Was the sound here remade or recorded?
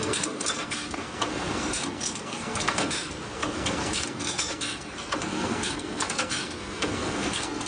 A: remade